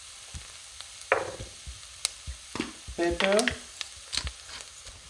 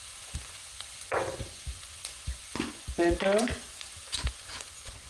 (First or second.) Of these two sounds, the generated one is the second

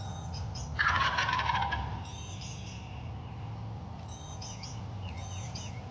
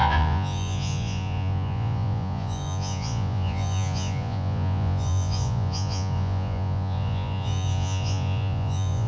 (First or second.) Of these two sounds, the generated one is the second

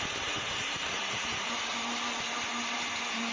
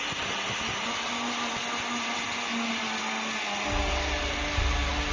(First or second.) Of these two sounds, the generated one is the first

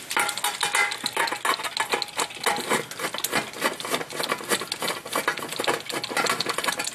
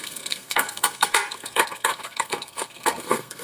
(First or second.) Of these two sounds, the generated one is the second